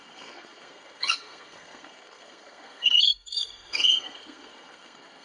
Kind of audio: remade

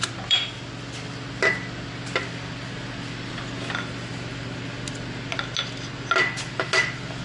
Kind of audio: recorded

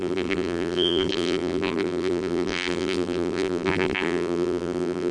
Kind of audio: remade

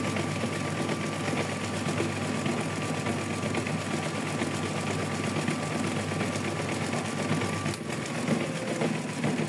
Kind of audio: recorded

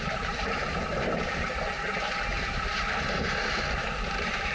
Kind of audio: remade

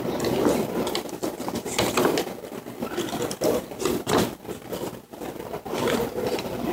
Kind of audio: remade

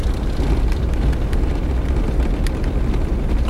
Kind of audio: recorded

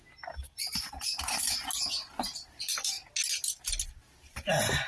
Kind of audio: recorded